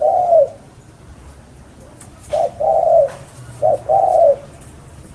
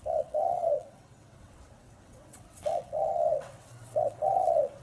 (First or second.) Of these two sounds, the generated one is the second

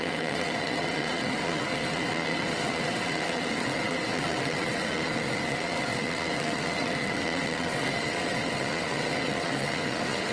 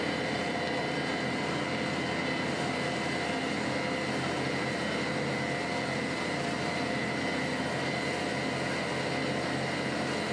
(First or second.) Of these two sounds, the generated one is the first